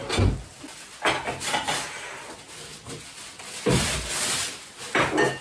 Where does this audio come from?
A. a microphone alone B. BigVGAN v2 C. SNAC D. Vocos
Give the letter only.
A